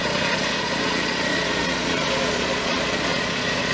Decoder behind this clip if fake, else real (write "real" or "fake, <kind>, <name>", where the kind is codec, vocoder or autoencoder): fake, vocoder, Vocos